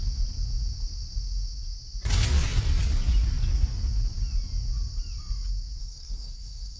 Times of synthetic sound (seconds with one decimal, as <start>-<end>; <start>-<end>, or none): 5.8-6.8